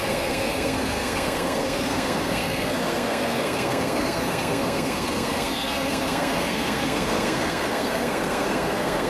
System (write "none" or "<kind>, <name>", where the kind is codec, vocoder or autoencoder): codec, SNAC